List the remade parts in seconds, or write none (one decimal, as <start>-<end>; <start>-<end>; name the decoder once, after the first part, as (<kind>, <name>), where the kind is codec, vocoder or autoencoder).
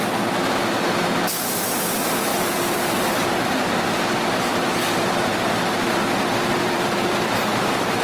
2.3-4.6 (vocoder, BigVGAN v2); 6.6-8.0